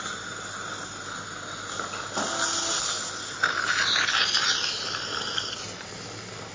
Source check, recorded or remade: recorded